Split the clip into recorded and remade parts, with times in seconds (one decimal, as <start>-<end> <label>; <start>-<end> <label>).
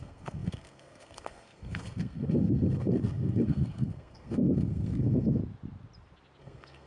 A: 0.0-5.4 remade; 5.4-6.4 recorded; 6.4-6.9 remade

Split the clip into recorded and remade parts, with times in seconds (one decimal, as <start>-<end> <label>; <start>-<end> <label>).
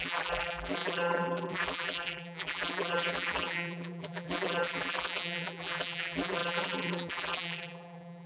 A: 0.0-8.3 remade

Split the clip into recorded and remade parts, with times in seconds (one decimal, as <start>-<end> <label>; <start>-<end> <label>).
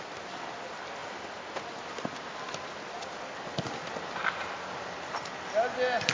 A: 0.0-6.1 recorded